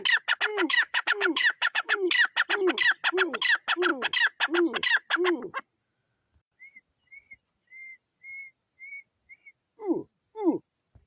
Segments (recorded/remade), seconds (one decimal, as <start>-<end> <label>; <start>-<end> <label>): 0.0-0.5 recorded; 0.5-2.1 remade; 2.1-11.1 recorded